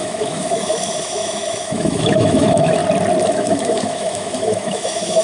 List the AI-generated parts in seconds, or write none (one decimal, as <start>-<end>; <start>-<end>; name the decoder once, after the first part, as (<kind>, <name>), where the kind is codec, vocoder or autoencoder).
0.0-2.8 (autoencoder, DAC-VAE); 3.3-5.2

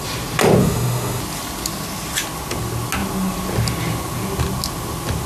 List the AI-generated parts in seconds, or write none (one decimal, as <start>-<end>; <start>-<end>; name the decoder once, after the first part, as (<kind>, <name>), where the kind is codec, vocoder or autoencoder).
0.6-1.2 (autoencoder, DAC-VAE)

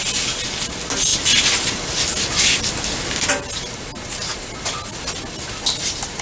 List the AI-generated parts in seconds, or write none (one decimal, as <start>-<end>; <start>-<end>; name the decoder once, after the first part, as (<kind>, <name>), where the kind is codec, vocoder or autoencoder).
none

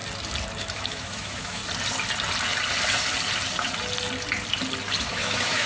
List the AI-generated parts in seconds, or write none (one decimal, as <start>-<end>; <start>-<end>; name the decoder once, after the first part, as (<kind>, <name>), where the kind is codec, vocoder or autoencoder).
0.6-1.6 (autoencoder, DAC-VAE); 5.0-5.7

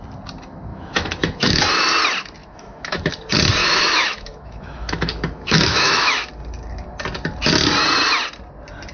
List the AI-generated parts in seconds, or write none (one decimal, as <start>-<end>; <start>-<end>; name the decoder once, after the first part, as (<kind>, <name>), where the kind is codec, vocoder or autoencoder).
0.7-1.6 (autoencoder, DAC-VAE); 2.4-3.1; 3.6-6.3

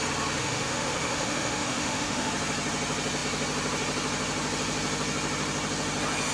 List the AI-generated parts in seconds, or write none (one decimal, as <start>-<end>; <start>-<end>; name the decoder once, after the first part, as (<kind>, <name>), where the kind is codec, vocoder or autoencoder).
0.4-2.3 (autoencoder, DAC-VAE)

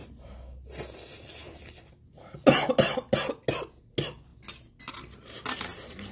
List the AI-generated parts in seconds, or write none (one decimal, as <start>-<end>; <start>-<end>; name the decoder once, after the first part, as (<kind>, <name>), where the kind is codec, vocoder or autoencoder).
none